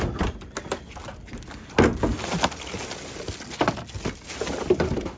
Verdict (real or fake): real